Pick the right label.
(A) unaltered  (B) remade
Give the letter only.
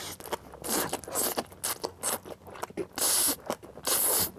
A